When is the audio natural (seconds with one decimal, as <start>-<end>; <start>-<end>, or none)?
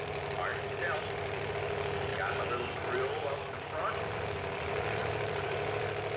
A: 0.0-0.5; 1.5-2.1; 4.0-5.0; 5.8-6.2